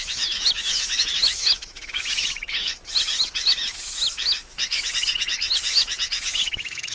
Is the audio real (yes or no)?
no